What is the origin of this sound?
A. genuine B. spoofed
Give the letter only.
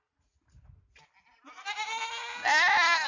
A